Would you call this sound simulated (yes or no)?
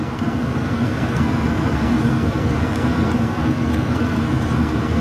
yes